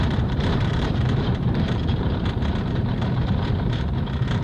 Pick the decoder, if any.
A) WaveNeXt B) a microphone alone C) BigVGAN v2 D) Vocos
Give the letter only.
C